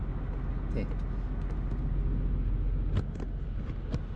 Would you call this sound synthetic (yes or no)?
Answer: no